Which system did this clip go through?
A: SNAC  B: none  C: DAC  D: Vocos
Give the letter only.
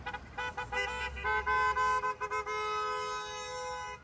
B